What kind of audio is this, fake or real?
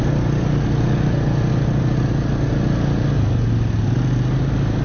real